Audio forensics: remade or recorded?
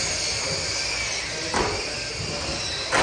recorded